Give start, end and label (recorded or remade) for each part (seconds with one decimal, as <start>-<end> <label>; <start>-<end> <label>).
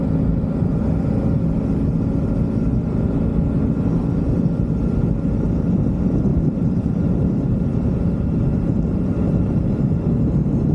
0.0-6.3 recorded; 6.3-8.7 remade; 8.7-10.7 recorded